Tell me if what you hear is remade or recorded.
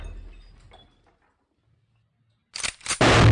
recorded